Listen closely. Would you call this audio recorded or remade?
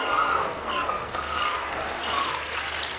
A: remade